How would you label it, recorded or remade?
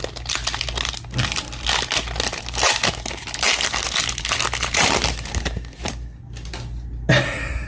recorded